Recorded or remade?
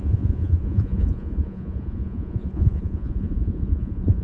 remade